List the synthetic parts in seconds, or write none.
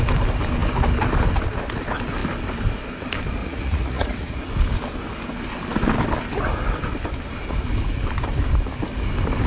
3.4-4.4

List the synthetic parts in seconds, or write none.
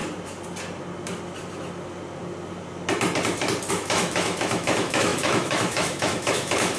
3.7-6.8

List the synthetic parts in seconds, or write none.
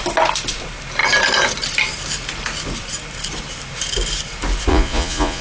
4.7-5.4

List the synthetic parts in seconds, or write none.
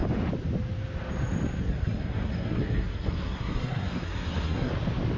1.6-4.7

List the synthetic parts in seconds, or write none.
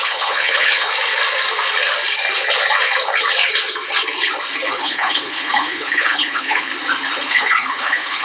0.0-0.9; 4.7-6.7; 7.3-8.2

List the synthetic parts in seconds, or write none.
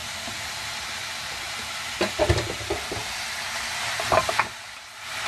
none